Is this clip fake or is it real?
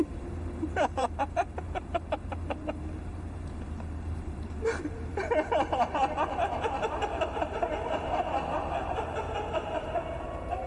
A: fake